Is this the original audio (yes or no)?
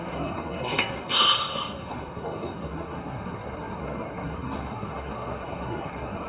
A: no